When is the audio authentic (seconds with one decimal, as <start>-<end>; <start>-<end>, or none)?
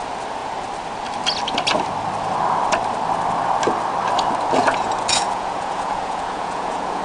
0.0-4.6